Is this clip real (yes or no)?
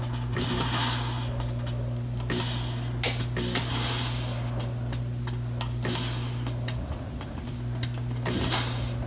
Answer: yes